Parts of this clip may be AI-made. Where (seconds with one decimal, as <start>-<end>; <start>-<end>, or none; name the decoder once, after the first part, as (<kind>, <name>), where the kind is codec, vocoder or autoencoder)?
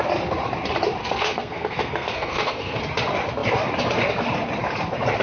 1.0-2.8 (codec, SNAC)